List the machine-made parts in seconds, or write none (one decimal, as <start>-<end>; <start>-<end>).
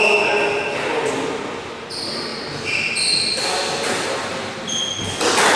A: none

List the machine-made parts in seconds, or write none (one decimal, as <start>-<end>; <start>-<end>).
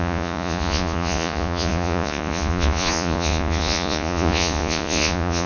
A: 0.0-5.5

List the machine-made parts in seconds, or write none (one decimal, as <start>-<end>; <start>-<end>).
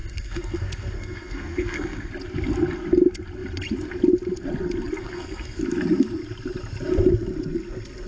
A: 0.0-2.1; 5.0-5.6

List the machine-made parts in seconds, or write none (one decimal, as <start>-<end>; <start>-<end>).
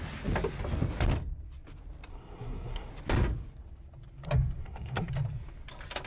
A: 2.1-2.9; 4.6-5.1